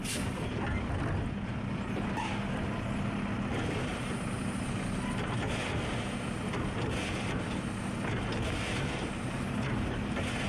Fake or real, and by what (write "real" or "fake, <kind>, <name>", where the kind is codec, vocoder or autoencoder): real